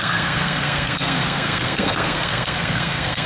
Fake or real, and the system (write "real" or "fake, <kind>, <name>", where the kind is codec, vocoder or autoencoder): fake, codec, SNAC